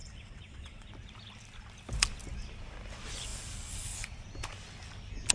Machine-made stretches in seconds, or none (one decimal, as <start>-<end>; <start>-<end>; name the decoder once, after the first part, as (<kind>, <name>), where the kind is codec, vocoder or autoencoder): 0.0-0.9 (vocoder, WaveNeXt)